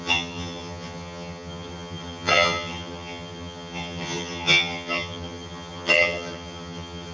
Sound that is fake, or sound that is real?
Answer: fake